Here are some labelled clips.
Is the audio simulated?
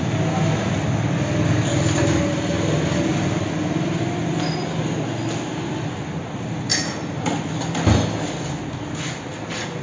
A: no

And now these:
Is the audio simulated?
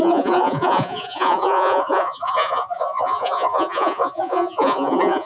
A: yes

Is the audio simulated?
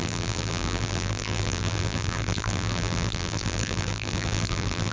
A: yes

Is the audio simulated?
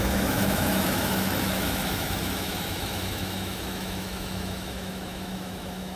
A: yes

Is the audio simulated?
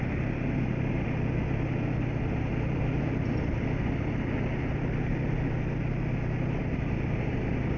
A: no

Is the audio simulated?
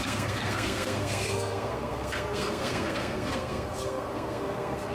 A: yes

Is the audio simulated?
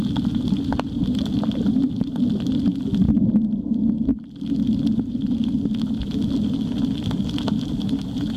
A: no